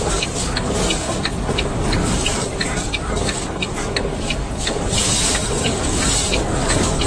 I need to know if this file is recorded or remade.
remade